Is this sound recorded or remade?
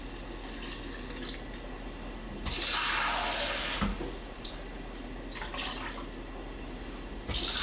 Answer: recorded